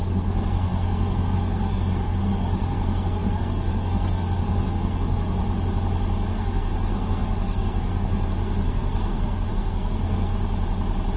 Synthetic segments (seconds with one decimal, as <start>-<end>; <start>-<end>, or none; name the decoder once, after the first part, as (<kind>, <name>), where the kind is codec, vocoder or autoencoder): 0.0-5.4 (codec, SNAC); 6.3-10.3

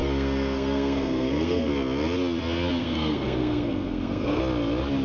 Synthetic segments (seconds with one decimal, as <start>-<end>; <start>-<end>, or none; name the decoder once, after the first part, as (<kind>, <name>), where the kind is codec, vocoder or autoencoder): 0.0-1.7 (codec, SNAC); 2.8-4.4

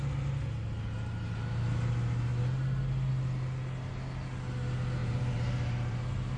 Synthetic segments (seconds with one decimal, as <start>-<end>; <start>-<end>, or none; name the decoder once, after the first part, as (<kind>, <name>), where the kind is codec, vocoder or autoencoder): 5.0-6.4 (vocoder, BigVGAN v2)

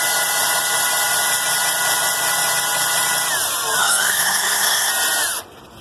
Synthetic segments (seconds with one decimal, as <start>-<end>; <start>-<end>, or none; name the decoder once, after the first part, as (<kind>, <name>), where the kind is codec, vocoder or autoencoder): 3.8-4.9 (codec, SNAC)

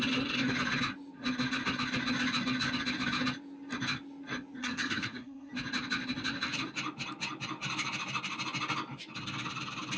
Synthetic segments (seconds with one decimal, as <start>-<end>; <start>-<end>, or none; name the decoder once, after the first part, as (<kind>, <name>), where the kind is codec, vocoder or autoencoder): 4.6-5.5 (codec, SNAC)